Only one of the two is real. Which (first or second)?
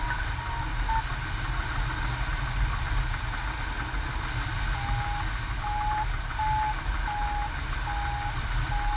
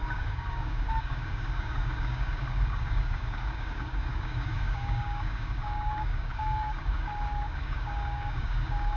first